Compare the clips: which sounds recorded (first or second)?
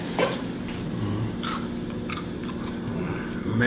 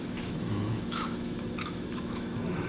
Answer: first